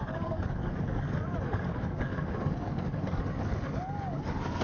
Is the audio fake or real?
fake